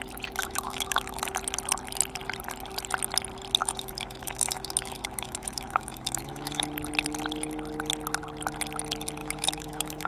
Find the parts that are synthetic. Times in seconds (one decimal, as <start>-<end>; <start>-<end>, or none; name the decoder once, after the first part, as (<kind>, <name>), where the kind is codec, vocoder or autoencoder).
0.4-1.3 (autoencoder, DAC-VAE); 3.6-6.6; 9.2-10.1